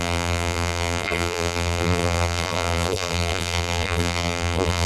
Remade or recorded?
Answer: remade